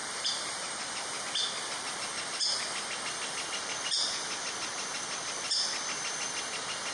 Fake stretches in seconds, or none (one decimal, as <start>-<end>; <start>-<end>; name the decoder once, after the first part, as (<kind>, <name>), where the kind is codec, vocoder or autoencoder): 0.0-1.2 (vocoder, BigVGAN v2)